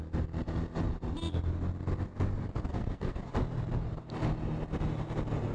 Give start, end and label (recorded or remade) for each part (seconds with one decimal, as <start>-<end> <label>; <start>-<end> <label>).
0.0-2.7 recorded; 2.7-3.3 remade; 3.3-5.5 recorded